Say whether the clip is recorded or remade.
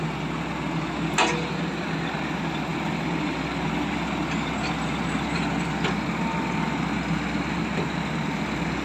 recorded